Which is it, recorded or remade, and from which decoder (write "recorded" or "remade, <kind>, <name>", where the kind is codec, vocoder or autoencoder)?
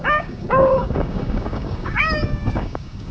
remade, codec, DAC